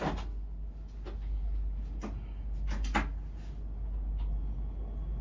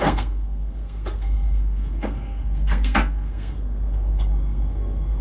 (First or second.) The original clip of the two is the first